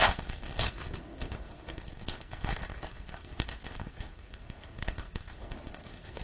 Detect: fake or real fake